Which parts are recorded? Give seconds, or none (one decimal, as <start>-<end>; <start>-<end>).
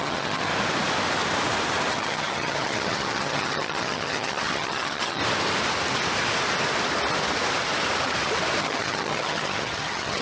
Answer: 0.5-1.9; 5.2-8.6